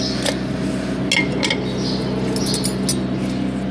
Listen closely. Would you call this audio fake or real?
real